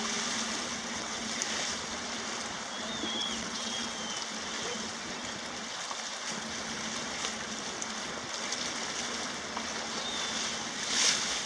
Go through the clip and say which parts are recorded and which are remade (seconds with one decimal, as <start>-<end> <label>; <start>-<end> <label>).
0.0-0.8 recorded; 0.8-1.4 remade; 1.4-3.2 recorded; 3.2-4.0 remade; 4.0-11.5 recorded